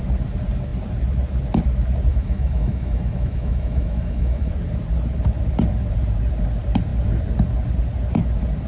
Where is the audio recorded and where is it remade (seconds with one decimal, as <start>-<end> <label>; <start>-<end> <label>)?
0.0-2.1 recorded; 2.1-4.5 remade; 4.5-8.7 recorded